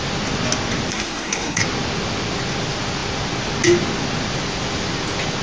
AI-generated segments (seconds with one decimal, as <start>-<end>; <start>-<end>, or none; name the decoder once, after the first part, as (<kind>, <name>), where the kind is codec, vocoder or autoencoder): 0.9-1.6 (codec, SNAC)